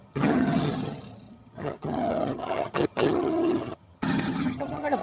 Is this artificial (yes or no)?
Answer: yes